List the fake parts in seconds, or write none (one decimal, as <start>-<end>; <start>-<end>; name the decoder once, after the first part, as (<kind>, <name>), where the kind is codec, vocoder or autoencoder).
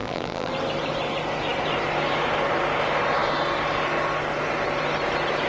0.0-0.5 (vocoder, BigVGAN v2)